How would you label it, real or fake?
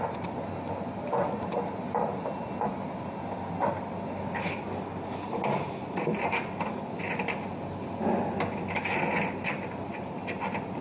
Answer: real